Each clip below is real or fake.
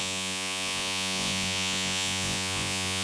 fake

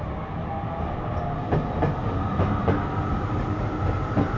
real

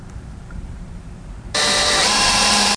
fake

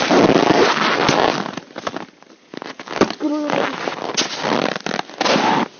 real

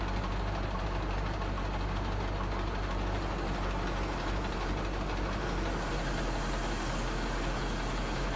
real